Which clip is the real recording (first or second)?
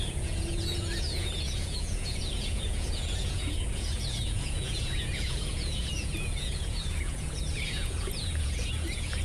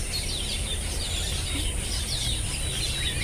second